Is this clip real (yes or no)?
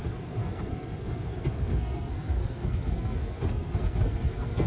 no